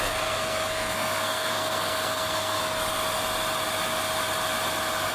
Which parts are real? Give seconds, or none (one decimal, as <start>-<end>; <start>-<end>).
2.6-5.1